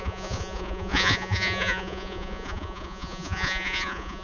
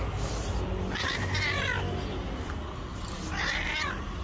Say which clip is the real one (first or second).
second